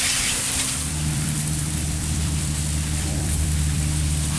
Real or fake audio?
fake